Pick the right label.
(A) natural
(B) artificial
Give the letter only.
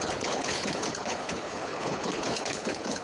B